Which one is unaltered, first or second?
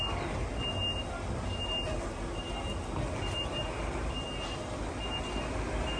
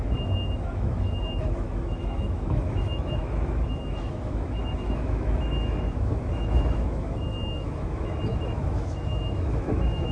first